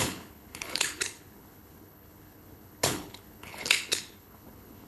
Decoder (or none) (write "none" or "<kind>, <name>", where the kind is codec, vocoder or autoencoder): codec, HILCodec